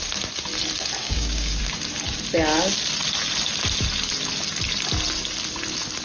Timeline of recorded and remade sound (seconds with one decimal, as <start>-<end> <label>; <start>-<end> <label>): 0.0-1.0 recorded; 1.0-1.6 remade; 1.6-6.0 recorded